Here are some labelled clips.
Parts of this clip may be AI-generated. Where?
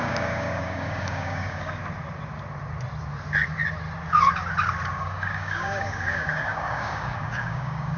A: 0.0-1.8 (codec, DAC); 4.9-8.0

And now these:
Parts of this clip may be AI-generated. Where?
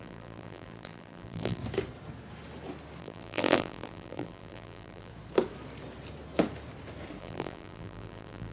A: 0.0-1.6 (vocoder, BigVGAN v2); 3.0-5.1; 7.2-8.5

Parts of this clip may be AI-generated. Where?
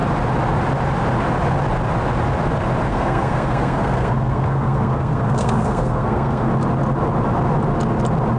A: 2.9-6.5 (codec, SNAC)